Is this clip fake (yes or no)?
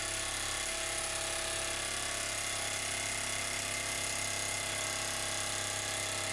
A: no